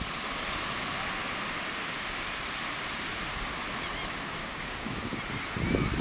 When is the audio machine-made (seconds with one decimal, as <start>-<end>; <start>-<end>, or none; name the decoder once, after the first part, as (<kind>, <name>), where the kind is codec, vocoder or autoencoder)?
4.4-5.2 (codec, DAC)